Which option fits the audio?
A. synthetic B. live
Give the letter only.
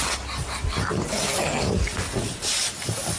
B